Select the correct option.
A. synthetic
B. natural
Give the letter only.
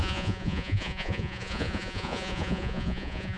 A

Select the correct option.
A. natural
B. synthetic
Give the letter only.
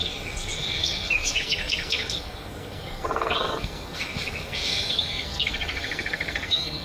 B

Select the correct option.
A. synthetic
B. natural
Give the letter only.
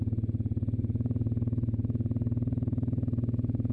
B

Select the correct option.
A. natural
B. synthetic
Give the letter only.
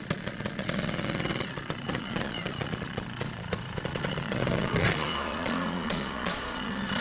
B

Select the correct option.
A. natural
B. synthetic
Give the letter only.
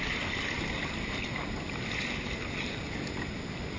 A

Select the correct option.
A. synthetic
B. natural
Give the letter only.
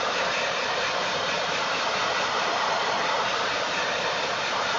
A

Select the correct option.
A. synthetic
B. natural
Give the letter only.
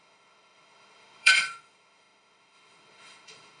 A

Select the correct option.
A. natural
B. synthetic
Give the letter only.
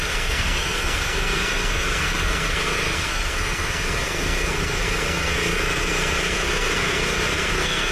B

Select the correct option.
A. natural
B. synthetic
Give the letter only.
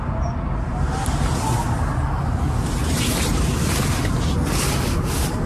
A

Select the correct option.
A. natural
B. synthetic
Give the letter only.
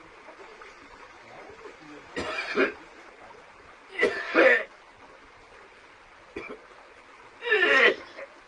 A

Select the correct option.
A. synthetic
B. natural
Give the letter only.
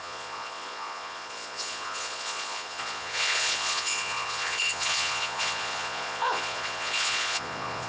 A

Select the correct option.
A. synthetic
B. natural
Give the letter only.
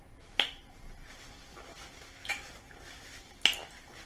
B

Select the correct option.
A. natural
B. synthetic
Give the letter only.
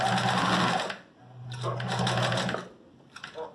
A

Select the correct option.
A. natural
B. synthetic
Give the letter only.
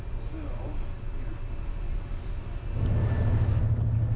A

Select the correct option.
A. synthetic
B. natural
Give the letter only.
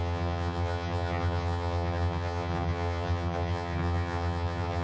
A